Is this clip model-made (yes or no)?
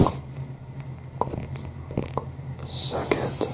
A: no